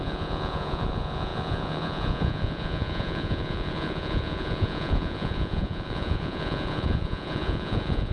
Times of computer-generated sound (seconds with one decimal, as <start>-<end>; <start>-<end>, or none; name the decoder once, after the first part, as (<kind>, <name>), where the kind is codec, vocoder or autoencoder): 0.0-8.1 (vocoder, Vocos)